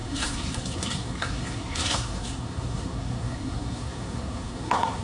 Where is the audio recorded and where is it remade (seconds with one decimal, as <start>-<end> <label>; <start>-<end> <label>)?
0.0-5.0 remade